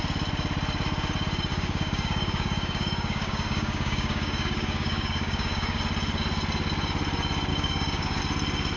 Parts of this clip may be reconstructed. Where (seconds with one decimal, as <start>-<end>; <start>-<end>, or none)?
1.5-5.8; 7.5-8.2